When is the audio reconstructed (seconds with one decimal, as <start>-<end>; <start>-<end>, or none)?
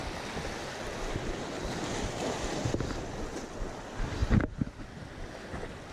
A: 4.2-4.8